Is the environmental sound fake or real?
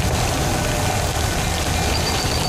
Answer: real